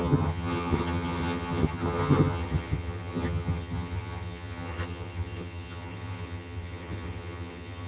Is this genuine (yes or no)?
no